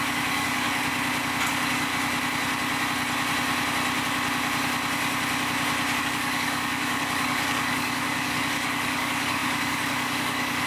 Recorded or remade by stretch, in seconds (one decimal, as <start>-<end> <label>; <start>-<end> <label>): 0.0-0.9 remade; 0.9-1.5 recorded; 1.5-1.9 remade; 1.9-6.0 recorded; 6.0-10.7 remade